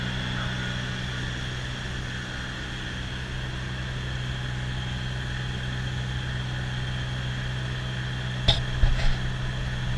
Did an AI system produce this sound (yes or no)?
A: no